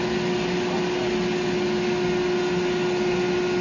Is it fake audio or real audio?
real